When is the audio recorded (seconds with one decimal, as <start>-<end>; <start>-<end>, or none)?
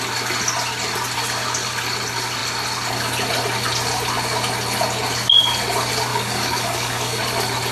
0.0-6.1; 7.2-7.7